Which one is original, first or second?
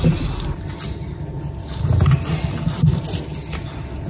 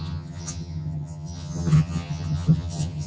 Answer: first